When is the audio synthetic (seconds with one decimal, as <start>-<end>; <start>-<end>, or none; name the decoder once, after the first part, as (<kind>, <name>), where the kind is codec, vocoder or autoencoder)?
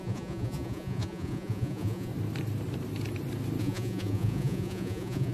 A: 0.0-2.1 (vocoder, Vocos); 3.6-5.3